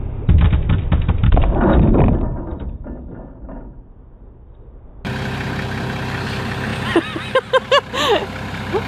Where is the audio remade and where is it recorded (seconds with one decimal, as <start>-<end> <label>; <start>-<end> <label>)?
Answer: 0.0-1.2 recorded; 1.2-2.0 remade; 2.0-8.9 recorded